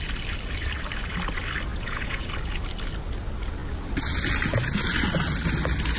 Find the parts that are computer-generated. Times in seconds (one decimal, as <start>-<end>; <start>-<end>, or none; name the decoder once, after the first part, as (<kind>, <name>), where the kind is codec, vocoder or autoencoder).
1.7-2.3 (vocoder, Vocos)